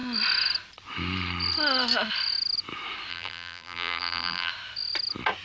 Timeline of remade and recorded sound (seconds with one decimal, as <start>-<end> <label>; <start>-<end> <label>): 0.0-3.1 recorded; 3.1-4.5 remade; 4.5-5.4 recorded